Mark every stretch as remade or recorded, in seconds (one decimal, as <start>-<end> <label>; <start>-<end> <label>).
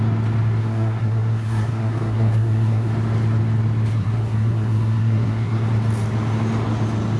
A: 0.0-0.6 recorded; 0.6-2.9 remade; 2.9-3.9 recorded; 3.9-5.7 remade; 5.7-7.2 recorded